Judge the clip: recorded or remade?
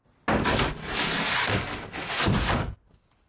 recorded